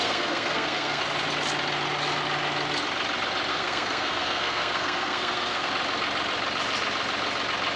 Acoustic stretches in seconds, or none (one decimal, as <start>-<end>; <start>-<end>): 1.0-3.5; 5.7-7.8

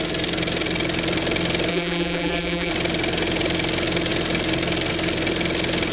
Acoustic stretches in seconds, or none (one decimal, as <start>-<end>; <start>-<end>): 0.0-1.7; 2.7-5.9

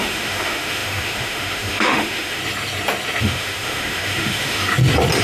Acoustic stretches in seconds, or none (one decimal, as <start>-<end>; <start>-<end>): 2.4-3.2; 4.7-5.2